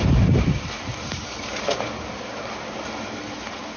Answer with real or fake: real